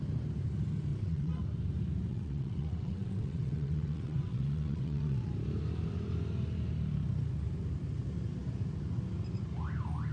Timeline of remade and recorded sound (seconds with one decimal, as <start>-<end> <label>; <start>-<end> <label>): 0.0-0.9 recorded; 0.9-1.4 remade; 1.4-2.1 recorded; 2.1-5.3 remade; 5.3-10.1 recorded